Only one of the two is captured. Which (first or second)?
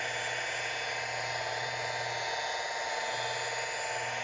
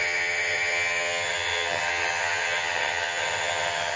first